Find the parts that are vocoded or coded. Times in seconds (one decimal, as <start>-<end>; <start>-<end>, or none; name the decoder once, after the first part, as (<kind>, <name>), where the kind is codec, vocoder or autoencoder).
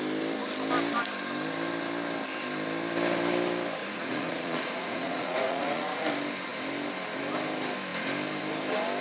3.8-6.1 (vocoder, Vocos)